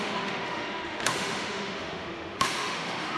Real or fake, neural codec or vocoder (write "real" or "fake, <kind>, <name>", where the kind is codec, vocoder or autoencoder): fake, autoencoder, DAC-VAE